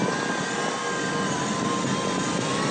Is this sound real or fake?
real